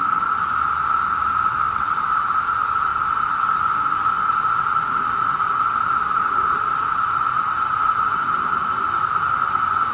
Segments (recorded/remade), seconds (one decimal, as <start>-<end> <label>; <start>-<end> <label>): 0.0-1.5 recorded; 1.5-2.3 remade; 2.3-9.9 recorded